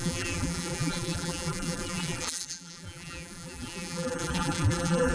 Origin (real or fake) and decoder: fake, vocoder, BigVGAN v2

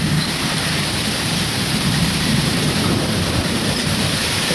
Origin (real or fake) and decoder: fake, vocoder, BigVGAN v2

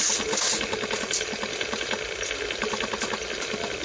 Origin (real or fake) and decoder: real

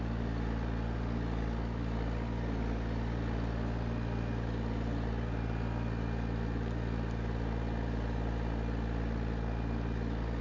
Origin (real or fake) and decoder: real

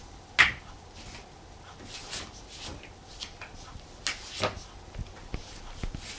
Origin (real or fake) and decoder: real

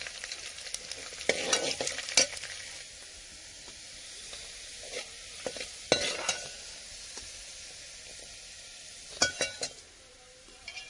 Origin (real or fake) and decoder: real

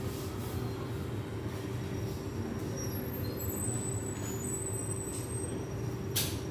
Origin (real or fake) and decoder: real